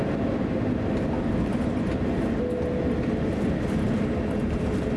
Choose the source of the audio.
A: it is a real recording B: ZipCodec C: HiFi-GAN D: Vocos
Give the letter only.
A